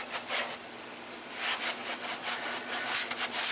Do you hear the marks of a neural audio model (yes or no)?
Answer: no